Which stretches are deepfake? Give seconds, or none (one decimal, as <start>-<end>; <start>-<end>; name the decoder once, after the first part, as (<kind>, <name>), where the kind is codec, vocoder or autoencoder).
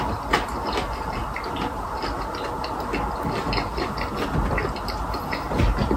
none